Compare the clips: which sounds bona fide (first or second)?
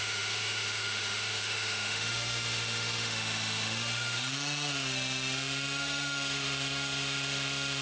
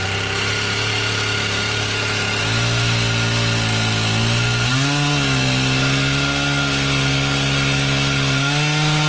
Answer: second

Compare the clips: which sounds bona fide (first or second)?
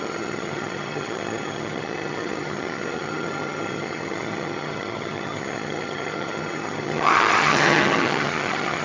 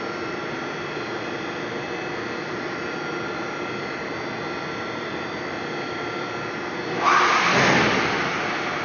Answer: second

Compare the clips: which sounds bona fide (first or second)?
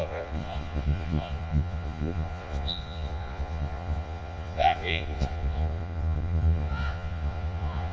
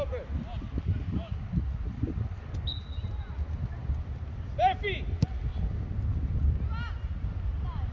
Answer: second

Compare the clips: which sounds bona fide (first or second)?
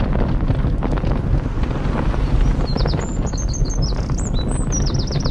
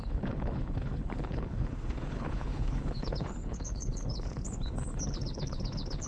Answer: first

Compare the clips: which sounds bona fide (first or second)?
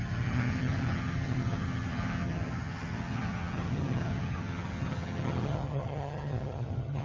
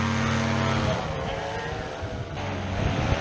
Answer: second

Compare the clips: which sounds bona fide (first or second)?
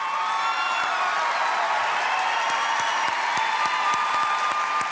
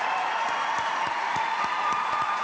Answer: first